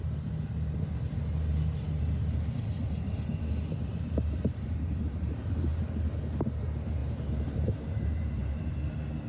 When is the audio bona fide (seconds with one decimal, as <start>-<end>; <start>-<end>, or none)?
0.0-3.9; 6.2-7.0; 8.7-9.3